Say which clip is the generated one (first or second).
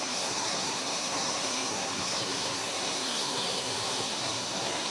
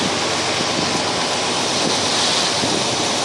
first